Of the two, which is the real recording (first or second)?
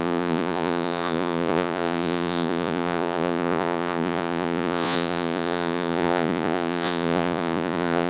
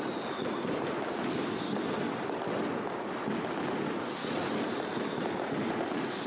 second